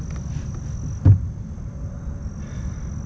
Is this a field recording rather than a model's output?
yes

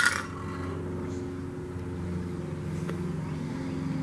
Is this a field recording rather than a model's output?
yes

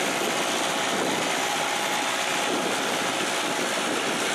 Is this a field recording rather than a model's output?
yes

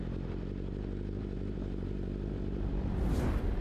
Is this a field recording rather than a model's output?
yes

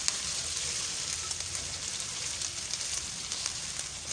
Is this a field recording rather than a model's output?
yes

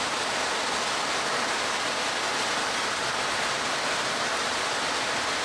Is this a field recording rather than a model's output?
yes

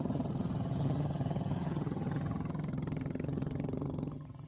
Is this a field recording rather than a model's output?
no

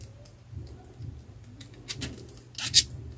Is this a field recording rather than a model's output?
yes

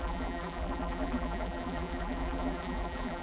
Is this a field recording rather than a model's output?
no